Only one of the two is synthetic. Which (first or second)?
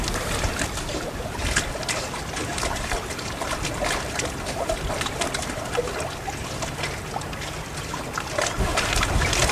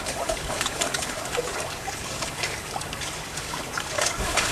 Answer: second